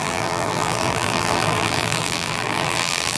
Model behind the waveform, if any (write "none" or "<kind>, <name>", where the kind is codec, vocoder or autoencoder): vocoder, BigVGAN v2